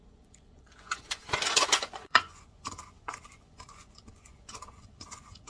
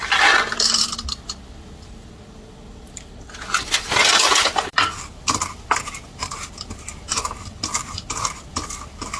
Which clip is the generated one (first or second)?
first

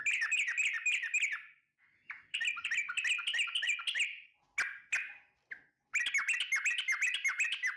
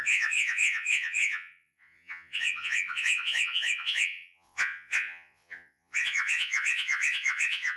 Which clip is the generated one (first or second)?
second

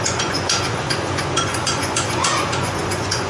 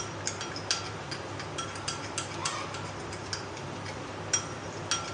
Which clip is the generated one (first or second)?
first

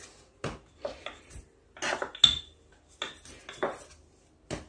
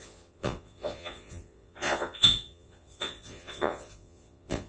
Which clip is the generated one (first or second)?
second